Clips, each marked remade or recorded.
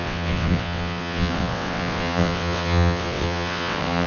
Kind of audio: remade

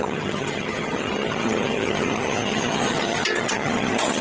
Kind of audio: remade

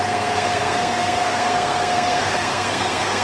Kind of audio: remade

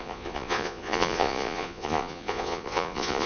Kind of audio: remade